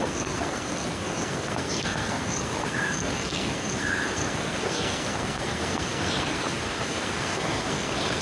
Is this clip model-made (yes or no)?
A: yes